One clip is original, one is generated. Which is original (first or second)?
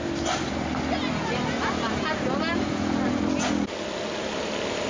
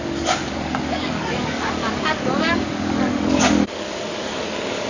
first